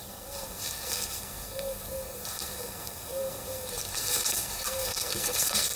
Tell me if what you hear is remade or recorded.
remade